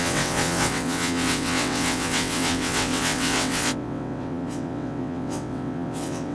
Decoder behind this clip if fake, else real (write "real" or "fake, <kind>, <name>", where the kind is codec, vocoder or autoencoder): fake, vocoder, WaveNeXt